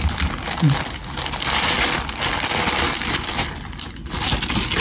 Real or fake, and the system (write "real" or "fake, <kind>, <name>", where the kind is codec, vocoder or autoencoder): real